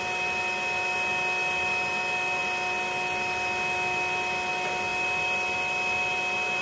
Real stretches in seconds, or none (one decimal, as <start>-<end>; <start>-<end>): 0.0-6.6